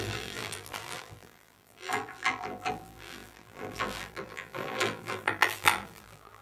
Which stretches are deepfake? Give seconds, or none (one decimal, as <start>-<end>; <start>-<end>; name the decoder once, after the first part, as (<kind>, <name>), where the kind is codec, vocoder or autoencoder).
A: 0.0-6.4 (vocoder, BigVGAN v2)